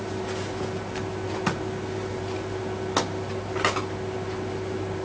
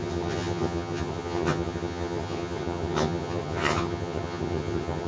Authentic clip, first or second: first